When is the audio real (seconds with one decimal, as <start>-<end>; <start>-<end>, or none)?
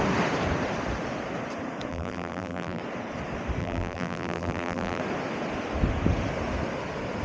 0.0-1.9; 2.8-3.6; 5.0-7.2